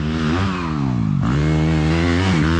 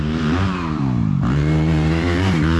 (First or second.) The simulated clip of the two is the second